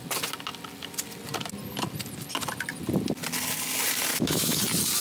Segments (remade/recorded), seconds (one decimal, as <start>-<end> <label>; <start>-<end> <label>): 0.0-4.1 recorded; 4.1-4.6 remade; 4.6-5.0 recorded

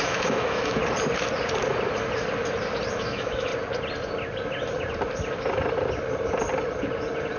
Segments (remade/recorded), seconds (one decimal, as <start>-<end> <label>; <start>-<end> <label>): 0.0-0.8 remade; 0.8-2.9 recorded; 2.9-3.5 remade; 3.5-7.4 recorded